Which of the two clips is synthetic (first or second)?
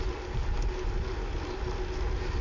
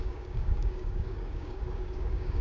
second